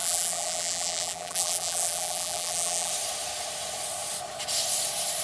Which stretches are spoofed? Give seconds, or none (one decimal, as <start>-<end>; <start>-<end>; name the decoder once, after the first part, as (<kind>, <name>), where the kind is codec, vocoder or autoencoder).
0.0-2.9 (vocoder, BigVGAN v2)